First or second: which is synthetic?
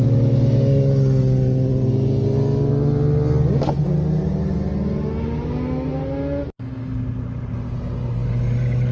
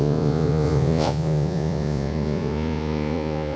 second